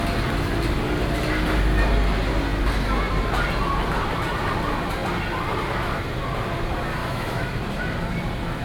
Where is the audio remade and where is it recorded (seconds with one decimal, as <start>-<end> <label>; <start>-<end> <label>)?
0.0-7.0 recorded; 7.0-7.6 remade; 7.6-8.6 recorded